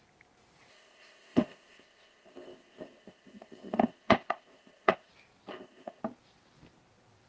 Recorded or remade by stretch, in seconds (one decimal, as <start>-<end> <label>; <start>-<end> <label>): 0.0-0.7 recorded; 0.7-5.1 remade; 5.1-5.5 recorded; 5.5-6.0 remade; 6.0-7.3 recorded

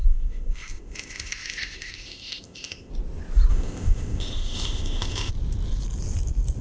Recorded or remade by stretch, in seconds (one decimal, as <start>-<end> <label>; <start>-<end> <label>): 0.0-2.9 remade; 2.9-3.5 recorded; 3.5-5.3 remade; 5.3-6.6 recorded

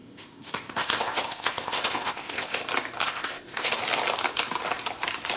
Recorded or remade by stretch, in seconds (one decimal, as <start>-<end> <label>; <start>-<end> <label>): 0.0-2.6 remade; 2.6-3.0 recorded; 3.0-3.7 remade; 3.7-5.4 recorded

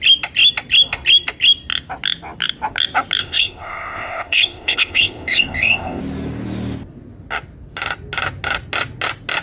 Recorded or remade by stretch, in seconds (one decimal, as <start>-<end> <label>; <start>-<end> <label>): 0.0-3.2 recorded; 3.2-6.0 remade; 6.0-9.4 recorded

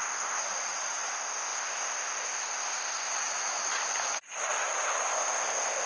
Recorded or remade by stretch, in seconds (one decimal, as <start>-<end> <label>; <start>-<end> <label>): 0.0-0.4 remade; 0.4-1.1 recorded; 1.1-3.1 remade; 3.1-5.1 recorded; 5.1-5.9 remade

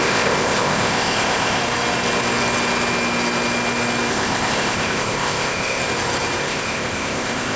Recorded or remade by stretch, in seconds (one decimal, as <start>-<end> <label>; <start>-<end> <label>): 0.0-1.6 remade; 1.6-4.1 recorded; 4.1-5.8 remade; 5.8-6.4 recorded; 6.4-7.6 remade

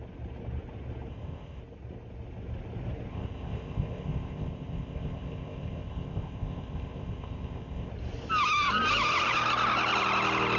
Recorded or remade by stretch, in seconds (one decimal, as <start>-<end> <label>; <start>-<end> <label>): 0.0-1.1 recorded; 1.1-1.6 remade; 1.6-3.1 recorded; 3.1-7.9 remade; 7.9-10.6 recorded